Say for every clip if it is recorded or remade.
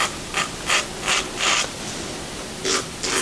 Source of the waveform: recorded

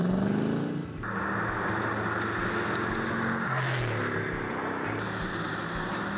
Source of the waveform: recorded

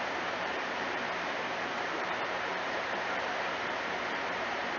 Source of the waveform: remade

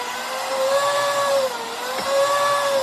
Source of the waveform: recorded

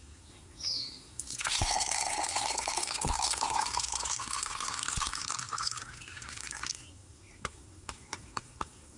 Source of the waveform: remade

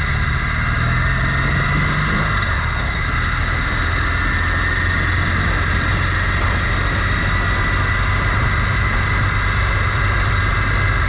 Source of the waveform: recorded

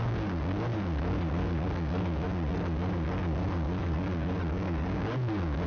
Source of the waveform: remade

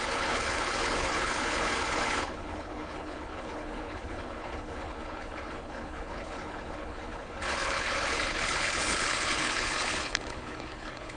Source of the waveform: remade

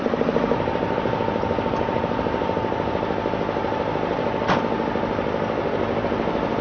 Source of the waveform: recorded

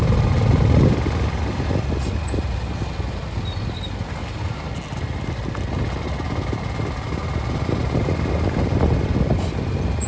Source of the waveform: recorded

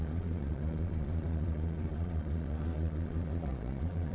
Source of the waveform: remade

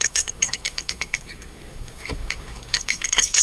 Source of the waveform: remade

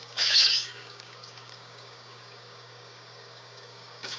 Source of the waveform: remade